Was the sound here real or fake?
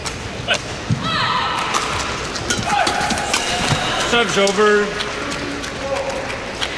real